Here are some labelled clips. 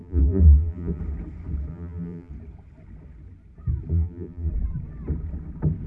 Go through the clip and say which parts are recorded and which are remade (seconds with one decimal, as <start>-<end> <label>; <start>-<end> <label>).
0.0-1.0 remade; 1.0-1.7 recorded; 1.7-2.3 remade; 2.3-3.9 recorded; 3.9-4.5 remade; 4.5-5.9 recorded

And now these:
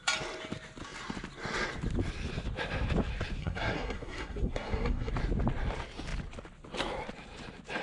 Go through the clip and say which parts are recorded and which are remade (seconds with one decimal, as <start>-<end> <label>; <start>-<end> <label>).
0.0-3.4 recorded; 3.4-5.1 remade; 5.1-7.8 recorded

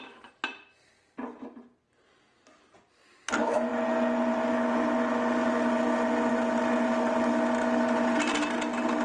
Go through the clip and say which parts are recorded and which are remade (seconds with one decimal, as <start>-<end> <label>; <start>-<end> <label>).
0.0-9.0 recorded

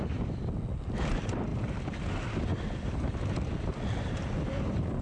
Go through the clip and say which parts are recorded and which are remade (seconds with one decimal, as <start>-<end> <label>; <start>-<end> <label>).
0.0-5.0 recorded